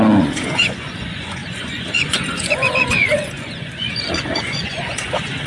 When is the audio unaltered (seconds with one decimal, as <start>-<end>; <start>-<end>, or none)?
none